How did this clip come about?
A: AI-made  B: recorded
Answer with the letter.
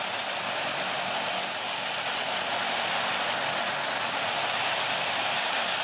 B